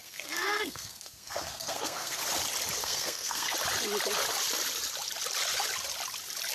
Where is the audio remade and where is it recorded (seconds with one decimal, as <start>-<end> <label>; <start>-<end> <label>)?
0.0-2.2 remade; 2.2-2.8 recorded; 2.8-3.5 remade; 3.5-6.5 recorded